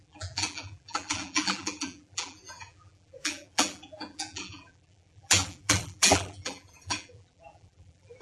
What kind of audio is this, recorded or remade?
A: remade